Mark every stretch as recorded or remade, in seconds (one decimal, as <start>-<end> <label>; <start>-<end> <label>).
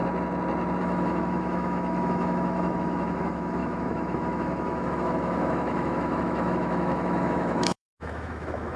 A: 0.0-0.8 recorded; 0.8-8.8 remade